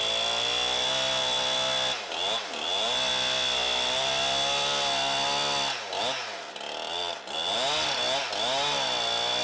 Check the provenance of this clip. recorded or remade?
recorded